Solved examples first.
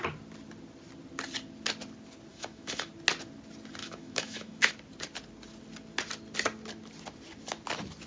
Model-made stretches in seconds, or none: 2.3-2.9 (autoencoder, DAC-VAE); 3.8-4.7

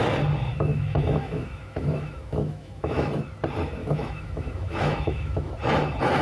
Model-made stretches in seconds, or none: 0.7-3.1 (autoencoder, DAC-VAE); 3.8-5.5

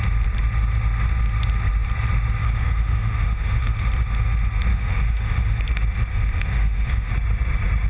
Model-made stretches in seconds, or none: 2.4-3.9 (autoencoder, DAC-VAE); 4.7-5.6; 6.1-7.1